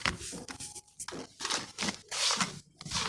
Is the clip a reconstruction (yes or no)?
no